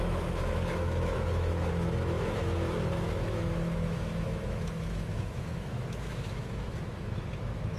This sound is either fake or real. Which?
fake